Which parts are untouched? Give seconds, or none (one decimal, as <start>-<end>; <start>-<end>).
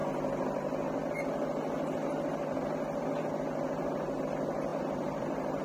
0.0-4.7